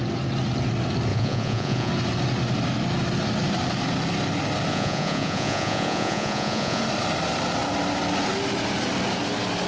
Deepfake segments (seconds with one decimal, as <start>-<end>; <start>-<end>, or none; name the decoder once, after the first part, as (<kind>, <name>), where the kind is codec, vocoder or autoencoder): 1.1-1.9 (vocoder, Vocos); 4.7-6.8